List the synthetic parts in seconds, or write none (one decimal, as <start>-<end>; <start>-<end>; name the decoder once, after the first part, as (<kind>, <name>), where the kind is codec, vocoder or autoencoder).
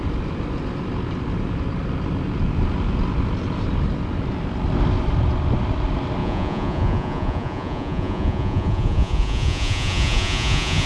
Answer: 6.2-10.9 (vocoder, Vocos)